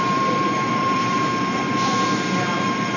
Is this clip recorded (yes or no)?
no